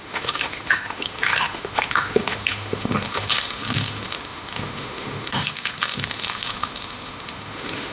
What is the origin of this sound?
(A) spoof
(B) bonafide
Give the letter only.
A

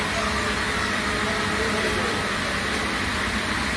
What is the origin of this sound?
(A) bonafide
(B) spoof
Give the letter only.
A